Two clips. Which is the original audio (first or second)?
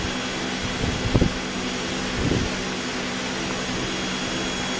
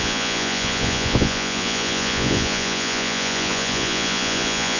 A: first